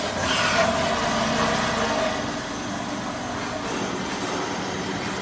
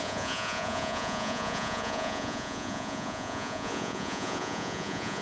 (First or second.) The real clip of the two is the first